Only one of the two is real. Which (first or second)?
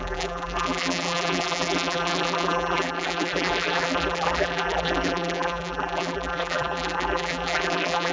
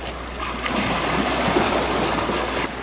second